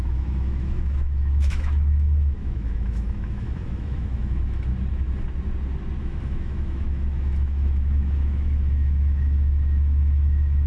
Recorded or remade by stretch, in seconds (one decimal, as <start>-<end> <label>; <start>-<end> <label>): 0.0-4.7 remade; 4.7-6.0 recorded; 6.0-10.7 remade